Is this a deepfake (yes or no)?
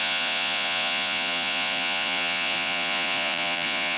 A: yes